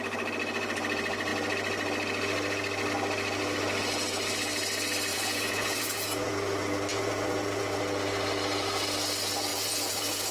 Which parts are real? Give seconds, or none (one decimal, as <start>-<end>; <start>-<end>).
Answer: 0.0-5.1; 6.3-6.9; 7.8-9.5